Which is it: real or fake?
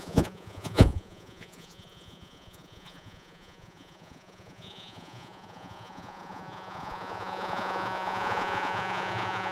fake